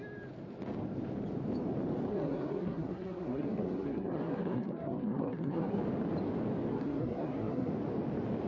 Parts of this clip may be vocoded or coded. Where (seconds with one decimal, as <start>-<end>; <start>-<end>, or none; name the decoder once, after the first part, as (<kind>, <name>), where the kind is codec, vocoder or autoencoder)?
2.1-5.8 (codec, SNAC); 6.7-7.7